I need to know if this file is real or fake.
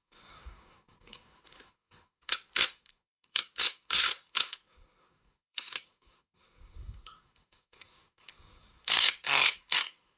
fake